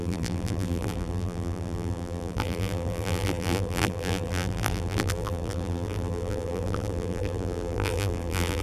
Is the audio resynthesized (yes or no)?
yes